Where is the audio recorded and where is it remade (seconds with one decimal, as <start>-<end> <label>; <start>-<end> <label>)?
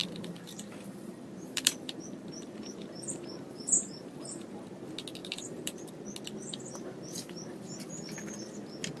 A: 0.0-4.5 remade; 4.5-5.2 recorded; 5.2-5.9 remade; 5.9-9.0 recorded